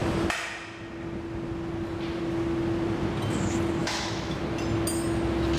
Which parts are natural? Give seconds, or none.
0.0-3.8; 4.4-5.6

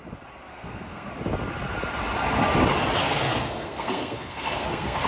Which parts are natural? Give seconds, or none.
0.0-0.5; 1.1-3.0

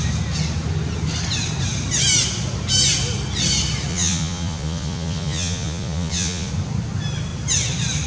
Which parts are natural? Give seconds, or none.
0.0-3.9; 6.5-8.1